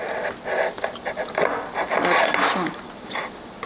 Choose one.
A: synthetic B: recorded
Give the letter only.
B